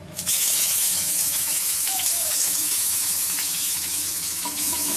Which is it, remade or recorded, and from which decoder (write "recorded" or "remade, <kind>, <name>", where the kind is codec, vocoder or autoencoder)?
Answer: remade, autoencoder, DAC-VAE